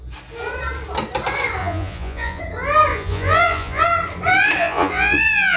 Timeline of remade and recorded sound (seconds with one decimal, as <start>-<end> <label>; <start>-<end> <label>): 0.0-1.6 recorded; 1.6-2.4 remade; 2.4-2.9 recorded; 2.9-3.8 remade; 3.8-4.6 recorded; 4.6-5.6 remade